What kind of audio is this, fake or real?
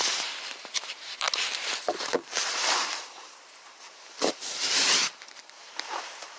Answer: fake